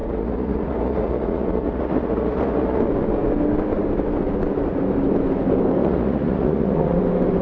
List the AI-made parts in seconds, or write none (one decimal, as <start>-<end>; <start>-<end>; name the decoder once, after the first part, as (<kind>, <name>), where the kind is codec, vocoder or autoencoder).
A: 0.0-2.8 (vocoder, Vocos); 5.8-7.0